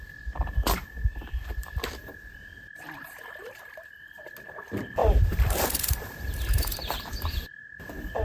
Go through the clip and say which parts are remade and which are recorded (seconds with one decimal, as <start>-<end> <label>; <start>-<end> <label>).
0.0-2.0 recorded; 2.0-4.2 remade; 4.2-5.0 recorded; 5.0-7.3 remade; 7.3-8.2 recorded